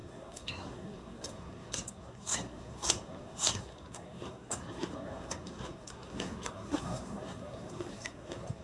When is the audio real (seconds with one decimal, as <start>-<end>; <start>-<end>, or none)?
none

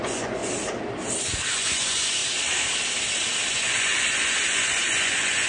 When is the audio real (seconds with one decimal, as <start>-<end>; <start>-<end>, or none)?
0.4-1.5; 2.2-3.5

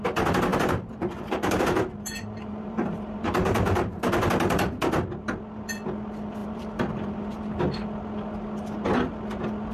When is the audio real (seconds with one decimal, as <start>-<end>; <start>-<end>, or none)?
0.0-0.5; 4.3-6.4; 7.5-9.7

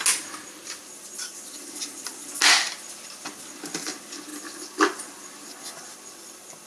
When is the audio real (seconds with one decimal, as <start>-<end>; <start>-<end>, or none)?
0.0-6.7

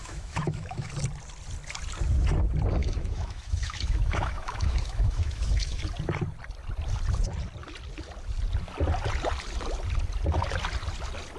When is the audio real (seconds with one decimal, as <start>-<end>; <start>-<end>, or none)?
0.9-2.8; 5.8-11.4

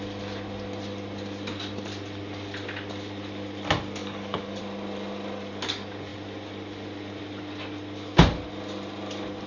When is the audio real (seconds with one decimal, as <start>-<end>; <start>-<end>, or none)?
0.0-4.0; 4.6-9.5

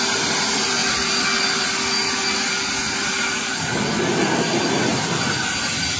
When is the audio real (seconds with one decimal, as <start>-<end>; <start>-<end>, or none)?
0.0-6.0